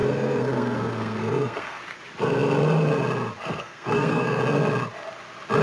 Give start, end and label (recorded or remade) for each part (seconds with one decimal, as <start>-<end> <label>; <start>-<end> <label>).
0.0-1.8 remade; 1.8-3.6 recorded; 3.6-4.4 remade; 4.4-5.6 recorded